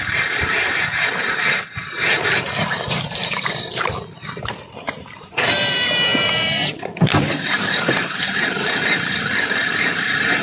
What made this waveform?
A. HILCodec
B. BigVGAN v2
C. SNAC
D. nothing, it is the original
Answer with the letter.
B